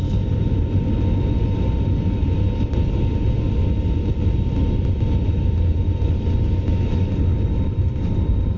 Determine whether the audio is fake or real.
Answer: real